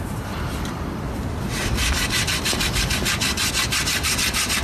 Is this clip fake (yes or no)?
no